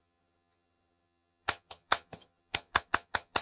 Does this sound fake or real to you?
fake